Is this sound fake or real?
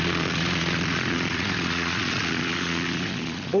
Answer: fake